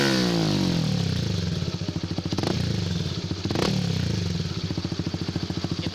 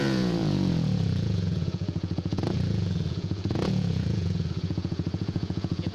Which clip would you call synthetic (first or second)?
second